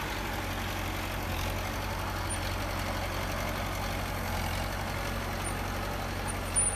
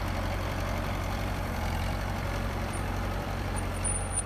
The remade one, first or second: second